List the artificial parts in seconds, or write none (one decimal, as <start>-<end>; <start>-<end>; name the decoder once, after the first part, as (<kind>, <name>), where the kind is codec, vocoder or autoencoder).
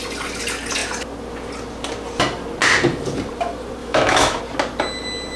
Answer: 3.8-4.4 (autoencoder, DAC-VAE)